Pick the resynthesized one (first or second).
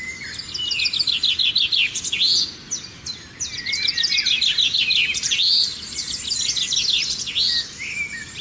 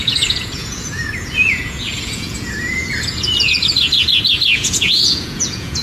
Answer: second